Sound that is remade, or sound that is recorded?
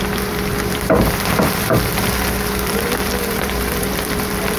remade